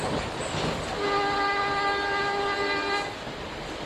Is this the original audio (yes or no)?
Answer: yes